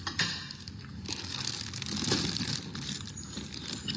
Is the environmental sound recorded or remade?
recorded